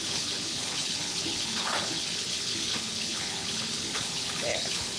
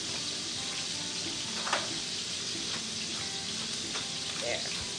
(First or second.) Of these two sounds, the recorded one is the second